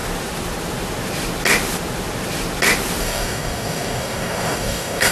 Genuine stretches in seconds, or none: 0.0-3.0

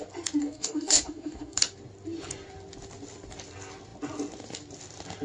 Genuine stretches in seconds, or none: 0.0-0.4; 1.6-5.2

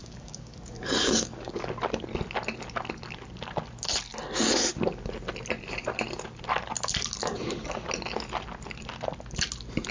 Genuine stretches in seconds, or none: 1.7-9.9